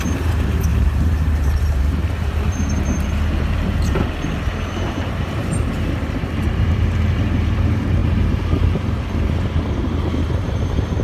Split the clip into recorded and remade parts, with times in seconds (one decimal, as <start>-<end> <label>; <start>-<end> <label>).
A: 0.0-11.0 remade